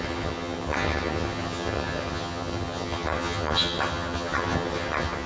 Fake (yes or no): yes